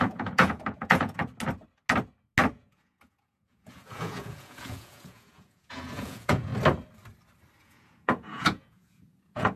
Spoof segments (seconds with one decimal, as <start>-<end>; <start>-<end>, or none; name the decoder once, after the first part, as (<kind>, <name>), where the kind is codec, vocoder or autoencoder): 0.0-1.2 (vocoder, Vocos); 2.5-6.5; 7.6-9.6